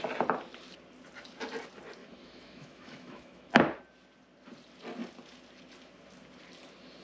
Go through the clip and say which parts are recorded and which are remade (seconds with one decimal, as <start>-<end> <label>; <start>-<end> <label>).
0.0-2.0 recorded; 2.0-3.5 remade; 3.5-7.0 recorded